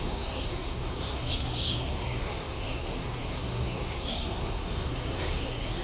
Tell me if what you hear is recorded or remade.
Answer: remade